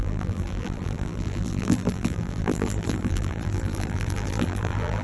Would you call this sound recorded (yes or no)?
no